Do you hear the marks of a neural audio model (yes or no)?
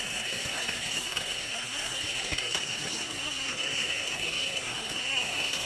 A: yes